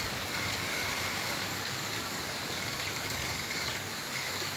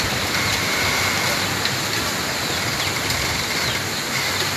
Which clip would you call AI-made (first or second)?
first